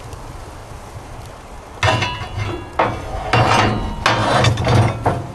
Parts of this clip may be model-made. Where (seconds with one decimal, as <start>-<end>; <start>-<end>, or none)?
none